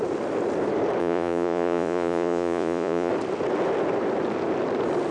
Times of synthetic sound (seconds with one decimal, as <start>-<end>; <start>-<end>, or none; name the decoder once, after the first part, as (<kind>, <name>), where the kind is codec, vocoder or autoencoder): 1.0-3.1 (vocoder, Vocos)